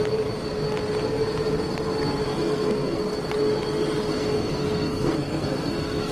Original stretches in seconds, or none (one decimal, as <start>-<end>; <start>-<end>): 0.0-2.3; 3.0-4.1